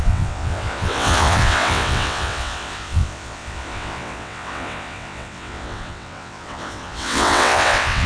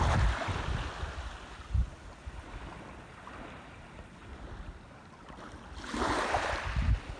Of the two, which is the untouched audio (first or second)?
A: second